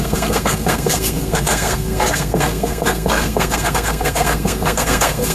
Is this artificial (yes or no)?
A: yes